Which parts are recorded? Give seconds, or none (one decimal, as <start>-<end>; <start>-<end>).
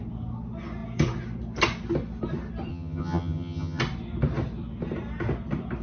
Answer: 0.0-2.7; 3.8-5.8